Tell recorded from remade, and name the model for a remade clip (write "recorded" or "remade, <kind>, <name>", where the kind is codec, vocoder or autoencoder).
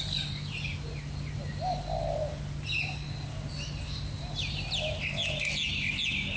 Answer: recorded